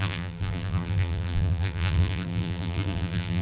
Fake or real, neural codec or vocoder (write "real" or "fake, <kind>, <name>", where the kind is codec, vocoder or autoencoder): fake, vocoder, BigVGAN v2